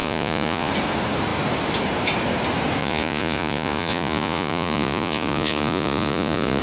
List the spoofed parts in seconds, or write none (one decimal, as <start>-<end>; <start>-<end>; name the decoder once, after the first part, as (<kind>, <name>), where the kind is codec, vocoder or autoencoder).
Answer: 0.0-0.7 (vocoder, Vocos); 2.8-6.6